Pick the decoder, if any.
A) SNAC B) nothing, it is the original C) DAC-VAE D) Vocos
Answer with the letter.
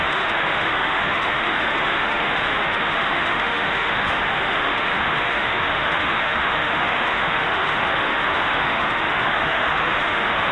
C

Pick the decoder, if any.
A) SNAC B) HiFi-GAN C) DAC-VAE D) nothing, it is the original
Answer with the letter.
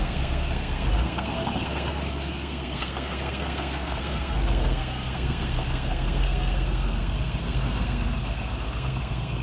A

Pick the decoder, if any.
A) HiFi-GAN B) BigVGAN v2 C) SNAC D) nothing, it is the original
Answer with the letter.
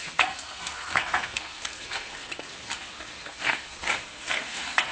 C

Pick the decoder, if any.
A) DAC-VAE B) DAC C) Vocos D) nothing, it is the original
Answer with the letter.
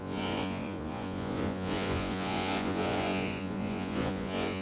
C